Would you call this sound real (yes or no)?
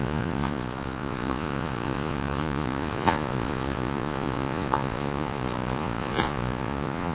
no